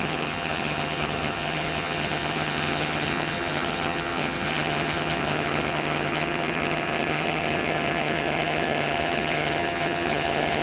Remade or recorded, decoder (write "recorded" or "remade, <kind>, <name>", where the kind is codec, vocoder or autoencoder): remade, vocoder, HiFi-GAN